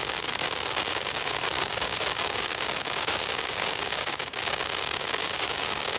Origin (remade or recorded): remade